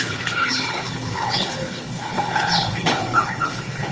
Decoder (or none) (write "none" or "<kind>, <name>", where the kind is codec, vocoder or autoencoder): codec, HILCodec